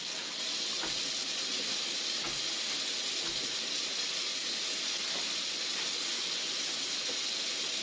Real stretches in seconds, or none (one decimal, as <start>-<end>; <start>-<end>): 0.0-7.8